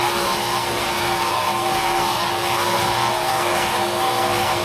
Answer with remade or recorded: remade